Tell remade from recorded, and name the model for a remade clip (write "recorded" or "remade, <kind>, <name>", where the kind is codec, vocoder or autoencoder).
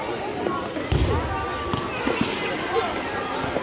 recorded